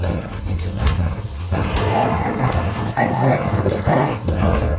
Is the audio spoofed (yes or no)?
yes